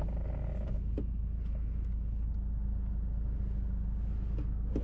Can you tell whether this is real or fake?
real